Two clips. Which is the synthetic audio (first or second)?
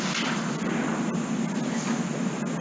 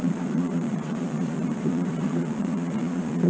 second